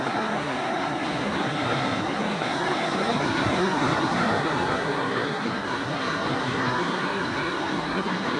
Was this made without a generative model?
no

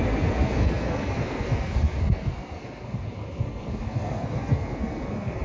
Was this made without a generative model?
no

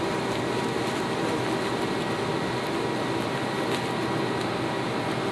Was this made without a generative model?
yes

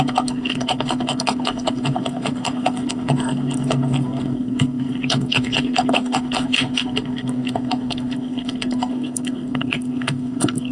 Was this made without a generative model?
no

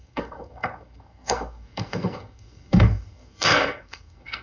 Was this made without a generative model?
no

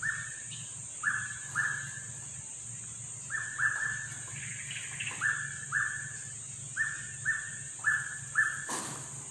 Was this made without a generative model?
yes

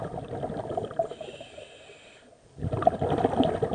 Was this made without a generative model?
yes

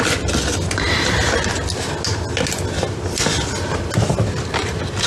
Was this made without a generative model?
yes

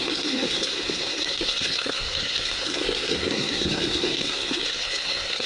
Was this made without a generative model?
no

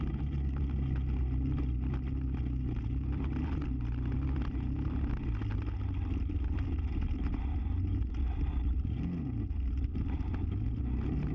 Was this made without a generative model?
yes